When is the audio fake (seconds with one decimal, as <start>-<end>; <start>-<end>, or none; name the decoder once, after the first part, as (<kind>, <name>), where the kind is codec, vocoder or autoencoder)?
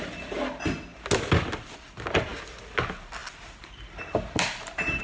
none